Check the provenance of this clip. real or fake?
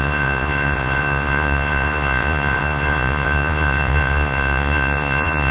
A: fake